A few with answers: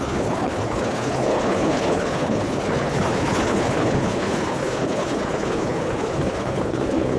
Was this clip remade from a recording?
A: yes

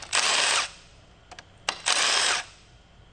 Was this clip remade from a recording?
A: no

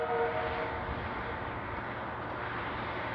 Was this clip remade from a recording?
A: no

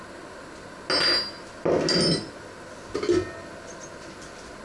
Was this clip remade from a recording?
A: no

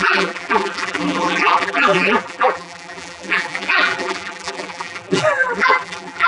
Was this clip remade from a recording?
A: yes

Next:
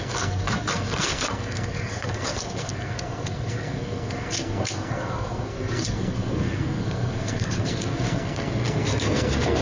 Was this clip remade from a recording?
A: yes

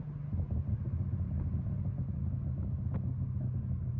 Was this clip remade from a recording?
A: no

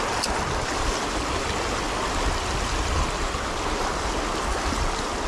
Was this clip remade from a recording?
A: no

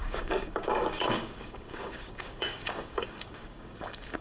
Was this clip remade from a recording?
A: yes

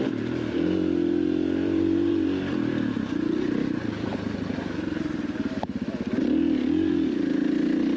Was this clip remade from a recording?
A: yes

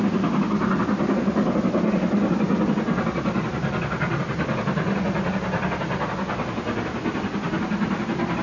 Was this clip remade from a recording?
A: no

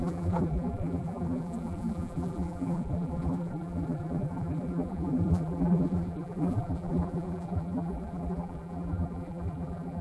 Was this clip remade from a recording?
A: yes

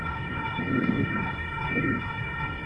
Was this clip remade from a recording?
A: yes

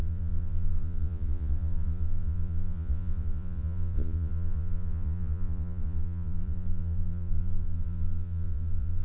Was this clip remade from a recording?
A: yes